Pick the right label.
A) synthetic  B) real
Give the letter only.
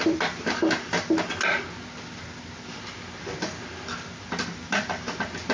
B